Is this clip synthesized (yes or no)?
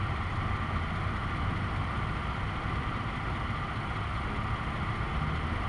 no